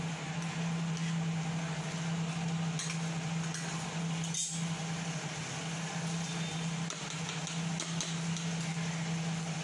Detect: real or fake real